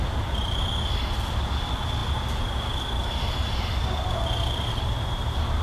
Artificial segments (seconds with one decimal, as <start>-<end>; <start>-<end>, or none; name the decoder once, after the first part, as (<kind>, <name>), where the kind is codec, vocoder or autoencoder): none